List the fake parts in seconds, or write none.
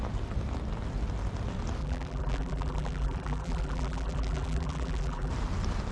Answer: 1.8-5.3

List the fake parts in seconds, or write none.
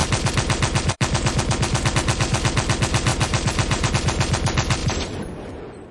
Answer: 3.1-3.9; 4.8-5.5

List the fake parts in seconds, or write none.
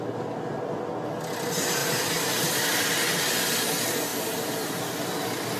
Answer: 1.8-2.8; 4.1-4.8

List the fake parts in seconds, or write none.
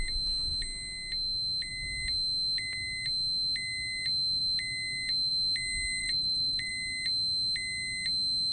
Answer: 6.0-6.7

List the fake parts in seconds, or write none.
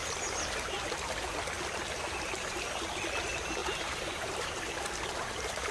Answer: 3.6-4.6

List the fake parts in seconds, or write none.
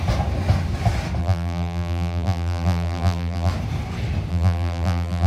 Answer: 1.2-3.5; 4.3-5.3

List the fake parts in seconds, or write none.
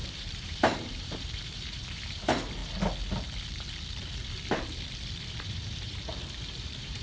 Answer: 0.0-2.6; 5.3-6.1; 6.6-7.0